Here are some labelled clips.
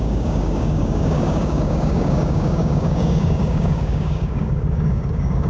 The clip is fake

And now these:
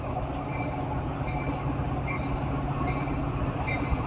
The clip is real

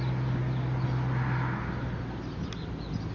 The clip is real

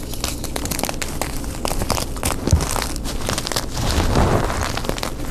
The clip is real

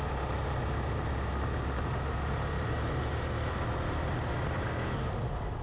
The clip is real